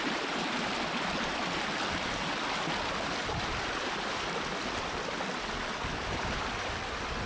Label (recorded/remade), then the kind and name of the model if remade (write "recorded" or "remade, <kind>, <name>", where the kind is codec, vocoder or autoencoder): recorded